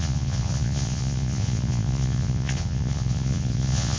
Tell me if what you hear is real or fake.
fake